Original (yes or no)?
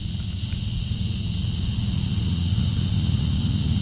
no